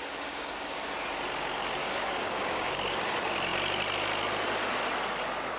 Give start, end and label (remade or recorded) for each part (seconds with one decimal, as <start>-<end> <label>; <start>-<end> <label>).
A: 0.0-0.9 remade; 0.9-1.8 recorded; 1.8-3.0 remade; 3.0-5.6 recorded